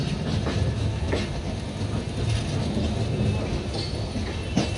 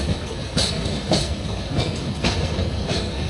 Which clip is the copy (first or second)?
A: second